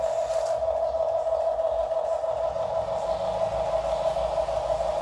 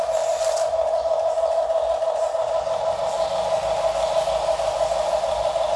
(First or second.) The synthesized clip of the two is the second